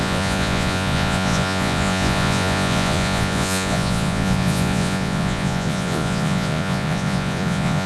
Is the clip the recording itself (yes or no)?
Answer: no